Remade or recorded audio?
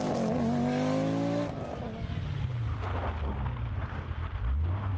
recorded